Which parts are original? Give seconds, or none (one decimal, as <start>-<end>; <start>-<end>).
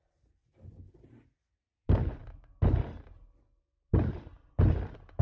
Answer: 0.0-5.2